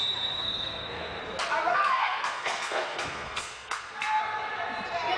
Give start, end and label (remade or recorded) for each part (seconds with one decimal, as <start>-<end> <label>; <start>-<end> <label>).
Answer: 0.0-0.4 recorded; 0.4-1.2 remade; 1.2-1.7 recorded; 1.7-4.2 remade; 4.2-5.2 recorded